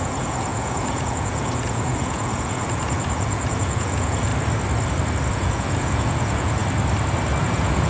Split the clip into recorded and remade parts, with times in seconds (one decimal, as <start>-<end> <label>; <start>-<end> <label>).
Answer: 0.0-4.3 remade; 4.3-5.3 recorded; 5.3-6.6 remade; 6.6-7.4 recorded; 7.4-7.9 remade